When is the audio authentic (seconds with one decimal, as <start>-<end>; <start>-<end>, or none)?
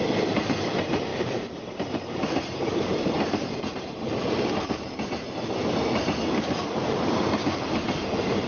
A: none